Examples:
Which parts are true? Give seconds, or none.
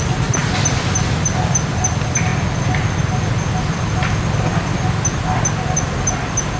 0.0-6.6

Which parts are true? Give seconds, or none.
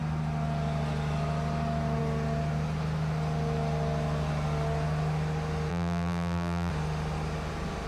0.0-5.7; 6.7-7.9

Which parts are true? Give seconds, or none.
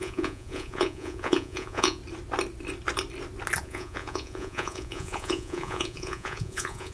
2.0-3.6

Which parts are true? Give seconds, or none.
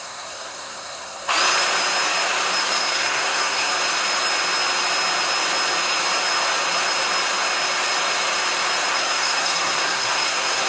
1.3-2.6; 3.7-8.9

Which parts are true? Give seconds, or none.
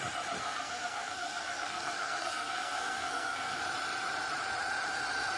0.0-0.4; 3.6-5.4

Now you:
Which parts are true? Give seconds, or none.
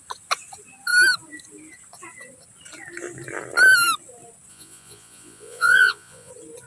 0.0-4.5; 6.3-6.7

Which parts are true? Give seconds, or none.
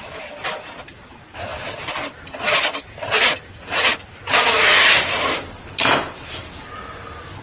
0.0-7.4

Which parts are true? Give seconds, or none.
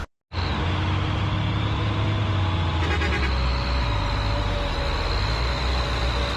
0.0-6.4